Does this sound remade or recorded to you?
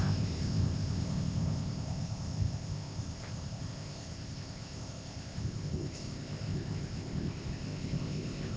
remade